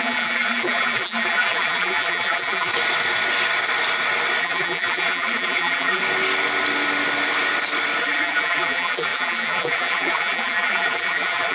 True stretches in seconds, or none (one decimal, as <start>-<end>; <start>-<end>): 2.7-4.4; 6.0-8.0